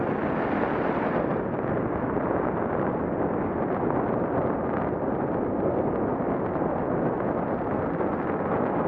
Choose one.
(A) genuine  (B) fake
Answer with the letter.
A